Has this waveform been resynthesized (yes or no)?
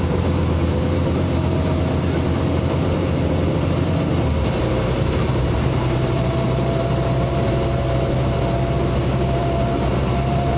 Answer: yes